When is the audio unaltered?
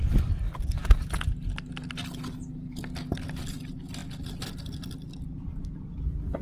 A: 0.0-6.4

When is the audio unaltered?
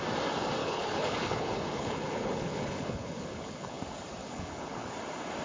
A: 0.0-0.6; 3.8-4.2; 4.9-5.4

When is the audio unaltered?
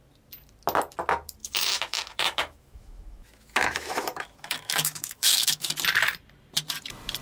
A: 0.0-1.4; 5.7-7.2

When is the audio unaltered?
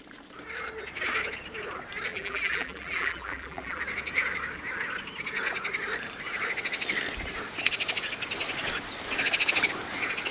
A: 0.0-2.1; 3.8-10.3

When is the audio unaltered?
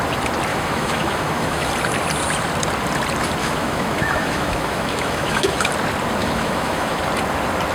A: 0.0-0.5; 1.7-3.4; 5.7-6.2; 7.0-7.7